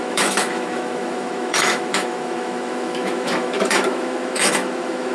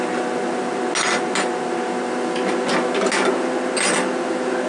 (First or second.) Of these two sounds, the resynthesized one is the first